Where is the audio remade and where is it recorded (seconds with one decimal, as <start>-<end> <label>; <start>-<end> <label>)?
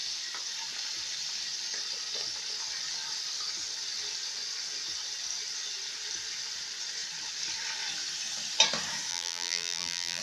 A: 0.0-9.1 recorded; 9.1-10.2 remade